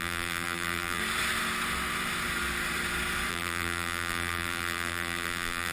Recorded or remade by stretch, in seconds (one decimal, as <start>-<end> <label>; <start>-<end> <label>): 0.0-1.0 remade; 1.0-3.3 recorded; 3.3-5.7 remade